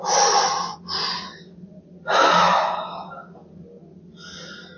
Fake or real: real